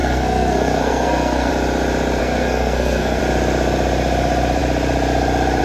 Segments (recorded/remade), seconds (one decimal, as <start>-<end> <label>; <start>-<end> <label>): 0.0-1.5 remade; 1.5-2.2 recorded; 2.2-3.2 remade; 3.2-5.6 recorded